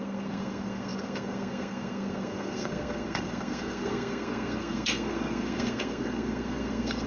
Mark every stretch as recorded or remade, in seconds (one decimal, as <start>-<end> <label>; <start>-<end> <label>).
0.0-7.1 remade